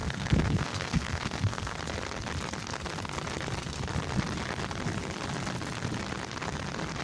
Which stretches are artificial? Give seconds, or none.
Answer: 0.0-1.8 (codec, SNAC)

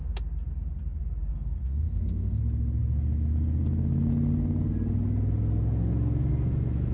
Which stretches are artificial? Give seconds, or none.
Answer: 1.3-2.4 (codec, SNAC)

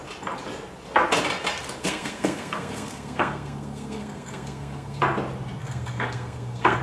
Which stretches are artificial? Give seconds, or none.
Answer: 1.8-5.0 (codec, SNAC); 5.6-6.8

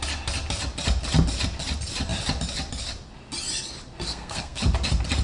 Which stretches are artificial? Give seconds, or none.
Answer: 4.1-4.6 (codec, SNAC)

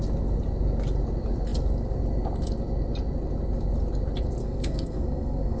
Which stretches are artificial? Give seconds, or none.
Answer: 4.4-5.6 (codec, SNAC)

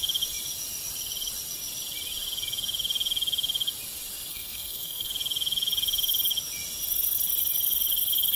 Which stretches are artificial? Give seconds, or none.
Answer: 4.3-5.1 (codec, SNAC)

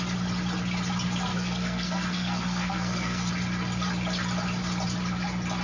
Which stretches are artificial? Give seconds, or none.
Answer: 1.3-3.3 (codec, SNAC)

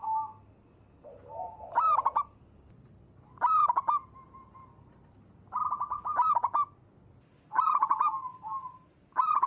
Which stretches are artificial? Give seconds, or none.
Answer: none